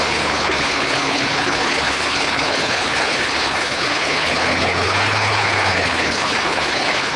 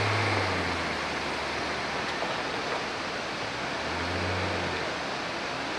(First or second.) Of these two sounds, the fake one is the first